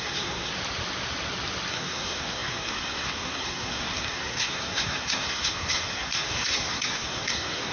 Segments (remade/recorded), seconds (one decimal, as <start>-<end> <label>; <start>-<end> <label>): 0.0-0.5 remade; 0.5-1.7 recorded; 1.7-7.7 remade